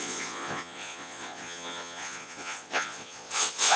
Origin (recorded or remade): remade